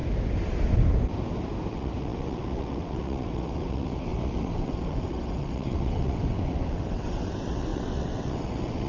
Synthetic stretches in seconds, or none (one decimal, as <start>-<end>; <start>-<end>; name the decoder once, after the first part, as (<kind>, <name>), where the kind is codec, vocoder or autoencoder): 1.7-8.9 (vocoder, WaveNeXt)